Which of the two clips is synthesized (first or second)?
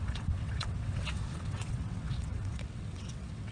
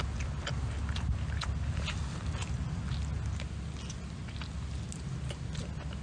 first